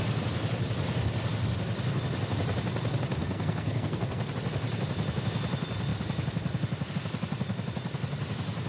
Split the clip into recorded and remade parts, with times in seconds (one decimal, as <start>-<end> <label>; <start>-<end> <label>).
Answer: 0.0-3.2 recorded; 3.2-4.3 remade; 4.3-8.7 recorded